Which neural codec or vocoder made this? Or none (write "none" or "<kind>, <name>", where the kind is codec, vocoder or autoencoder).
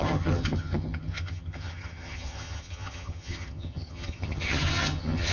vocoder, HiFi-GAN